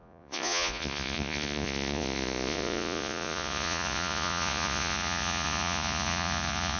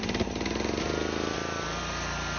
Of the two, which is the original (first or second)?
second